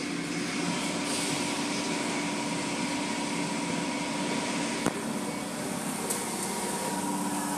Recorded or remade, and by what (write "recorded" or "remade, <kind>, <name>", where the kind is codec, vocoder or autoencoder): recorded